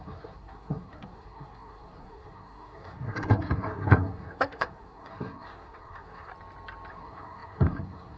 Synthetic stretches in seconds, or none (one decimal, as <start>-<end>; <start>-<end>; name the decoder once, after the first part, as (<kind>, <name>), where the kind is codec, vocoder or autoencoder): 0.0-6.3 (codec, SNAC); 6.9-8.2